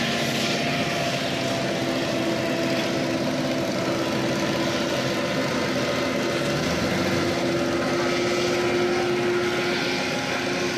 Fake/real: real